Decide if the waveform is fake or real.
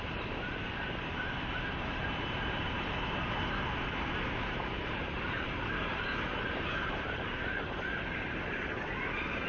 fake